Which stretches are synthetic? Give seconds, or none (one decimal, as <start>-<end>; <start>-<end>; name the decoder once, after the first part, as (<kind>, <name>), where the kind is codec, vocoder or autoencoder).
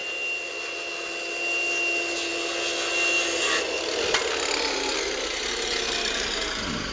none